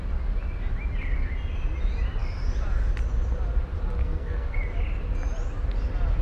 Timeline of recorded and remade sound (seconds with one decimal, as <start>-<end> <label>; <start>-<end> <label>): 0.0-4.0 recorded; 4.0-4.6 remade; 4.6-6.2 recorded